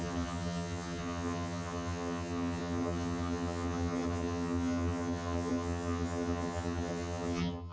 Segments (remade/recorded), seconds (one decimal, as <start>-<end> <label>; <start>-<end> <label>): 0.0-7.7 remade